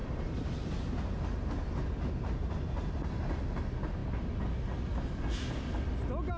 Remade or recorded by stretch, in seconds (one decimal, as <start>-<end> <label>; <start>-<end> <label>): 0.0-6.4 recorded